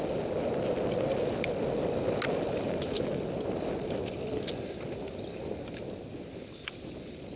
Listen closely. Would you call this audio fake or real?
real